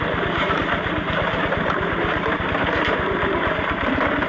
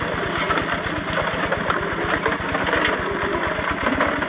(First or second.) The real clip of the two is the second